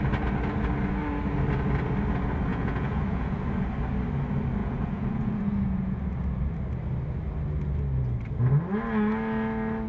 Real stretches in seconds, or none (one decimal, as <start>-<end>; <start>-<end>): 0.0-2.5; 3.4-4.6; 6.0-9.9